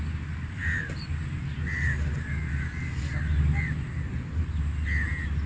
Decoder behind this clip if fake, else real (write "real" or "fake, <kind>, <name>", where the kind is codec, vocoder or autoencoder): real